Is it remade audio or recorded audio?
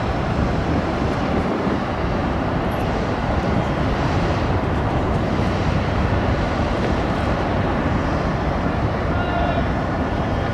remade